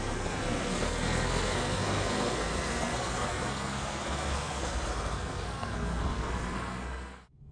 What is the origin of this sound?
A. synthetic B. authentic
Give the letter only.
A